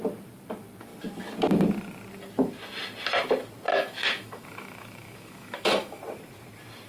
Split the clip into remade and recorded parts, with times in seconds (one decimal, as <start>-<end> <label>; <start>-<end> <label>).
0.0-3.7 recorded; 3.7-6.0 remade; 6.0-6.9 recorded